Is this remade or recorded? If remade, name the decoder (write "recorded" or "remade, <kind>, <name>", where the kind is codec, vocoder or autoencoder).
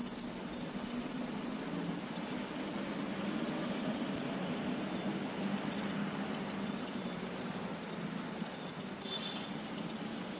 recorded